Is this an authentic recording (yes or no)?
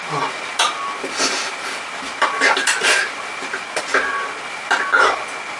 yes